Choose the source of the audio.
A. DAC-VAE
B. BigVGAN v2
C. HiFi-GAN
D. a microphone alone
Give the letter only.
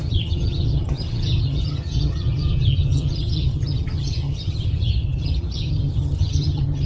C